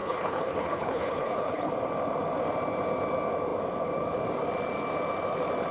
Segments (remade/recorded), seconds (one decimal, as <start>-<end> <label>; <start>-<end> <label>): 0.0-1.7 remade; 1.7-5.7 recorded